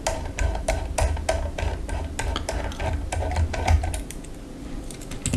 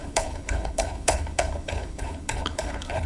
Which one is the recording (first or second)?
first